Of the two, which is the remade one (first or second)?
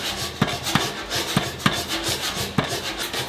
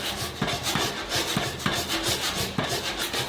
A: second